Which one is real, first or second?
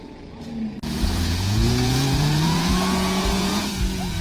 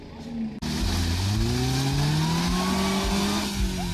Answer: second